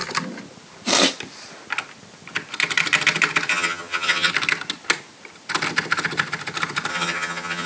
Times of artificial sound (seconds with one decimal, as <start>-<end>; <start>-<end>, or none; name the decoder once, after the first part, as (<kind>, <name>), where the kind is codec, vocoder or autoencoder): 3.5-4.3 (vocoder, HiFi-GAN); 6.9-7.7